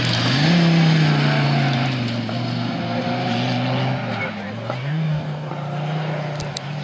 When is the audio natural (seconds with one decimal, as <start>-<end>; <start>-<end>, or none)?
0.0-4.8; 5.5-6.8